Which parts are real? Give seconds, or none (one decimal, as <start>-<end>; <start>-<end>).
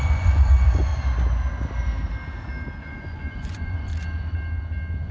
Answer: 0.9-2.8; 3.9-5.1